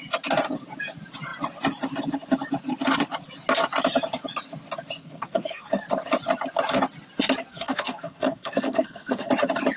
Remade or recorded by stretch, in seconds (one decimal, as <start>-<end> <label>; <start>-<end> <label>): 0.0-5.0 recorded; 5.0-5.7 remade; 5.7-7.5 recorded; 7.5-9.3 remade; 9.3-9.8 recorded